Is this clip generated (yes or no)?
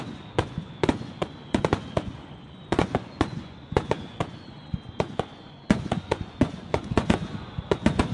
yes